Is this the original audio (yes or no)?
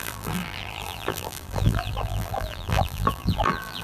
no